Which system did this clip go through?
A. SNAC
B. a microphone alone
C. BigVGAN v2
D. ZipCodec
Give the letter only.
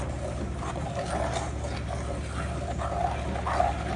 B